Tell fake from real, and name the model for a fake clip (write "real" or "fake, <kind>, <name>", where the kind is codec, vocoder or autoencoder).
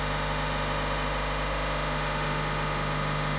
fake, autoencoder, DAC-VAE